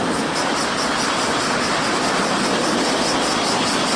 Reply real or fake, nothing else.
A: real